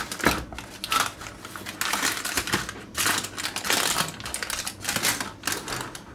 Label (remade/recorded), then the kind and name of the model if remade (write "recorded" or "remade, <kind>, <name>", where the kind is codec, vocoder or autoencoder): recorded